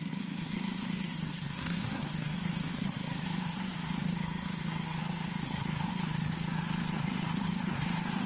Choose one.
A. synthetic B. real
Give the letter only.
A